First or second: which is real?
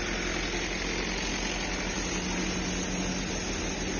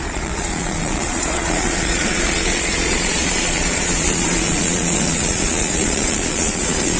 first